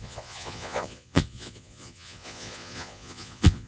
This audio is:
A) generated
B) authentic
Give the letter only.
A